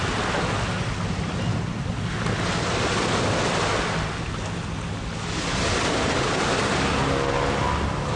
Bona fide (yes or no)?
yes